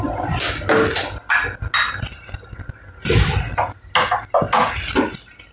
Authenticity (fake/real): real